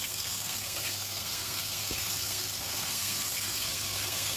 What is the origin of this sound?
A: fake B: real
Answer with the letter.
A